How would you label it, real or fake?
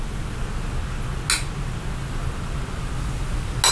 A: real